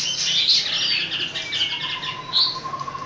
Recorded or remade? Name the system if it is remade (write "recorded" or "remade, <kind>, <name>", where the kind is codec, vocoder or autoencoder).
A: recorded